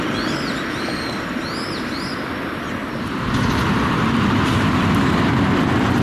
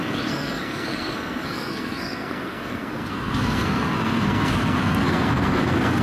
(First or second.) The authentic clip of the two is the first